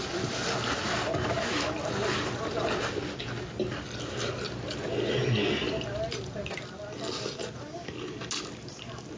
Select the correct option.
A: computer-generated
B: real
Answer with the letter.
B